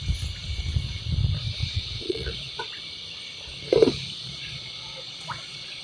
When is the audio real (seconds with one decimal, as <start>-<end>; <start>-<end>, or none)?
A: 0.0-1.7; 2.6-4.2